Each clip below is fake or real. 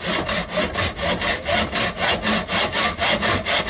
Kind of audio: real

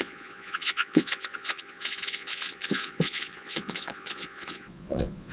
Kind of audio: fake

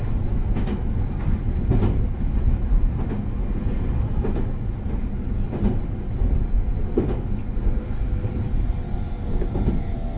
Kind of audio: real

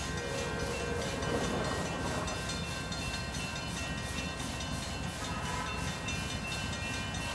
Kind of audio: real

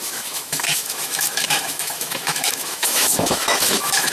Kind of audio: fake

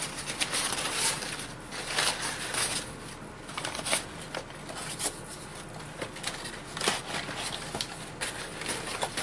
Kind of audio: real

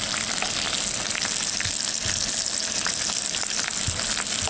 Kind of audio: real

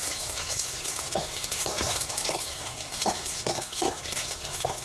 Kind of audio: fake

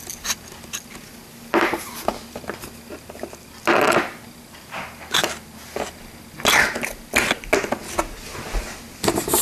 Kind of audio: real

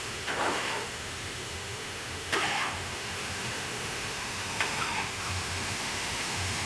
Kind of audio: fake